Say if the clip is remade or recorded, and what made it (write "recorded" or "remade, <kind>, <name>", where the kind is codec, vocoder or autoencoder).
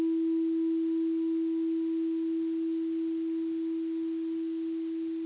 recorded